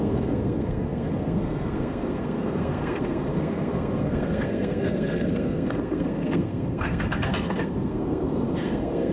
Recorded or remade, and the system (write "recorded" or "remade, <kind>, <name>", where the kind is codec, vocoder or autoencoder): remade, codec, SNAC